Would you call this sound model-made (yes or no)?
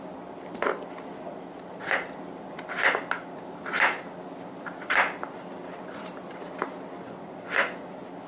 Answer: yes